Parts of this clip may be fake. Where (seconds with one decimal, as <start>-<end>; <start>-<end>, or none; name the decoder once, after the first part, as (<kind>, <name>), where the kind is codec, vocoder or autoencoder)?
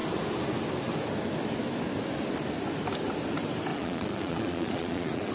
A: 3.7-5.3 (vocoder, Vocos)